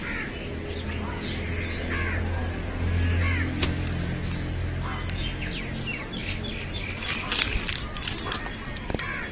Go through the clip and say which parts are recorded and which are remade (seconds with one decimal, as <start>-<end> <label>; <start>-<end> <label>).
0.0-6.2 recorded; 6.2-6.8 remade; 6.8-9.3 recorded